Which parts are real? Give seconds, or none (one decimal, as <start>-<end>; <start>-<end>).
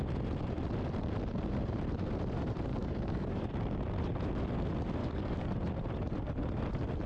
0.0-2.7; 3.5-5.0; 5.5-7.1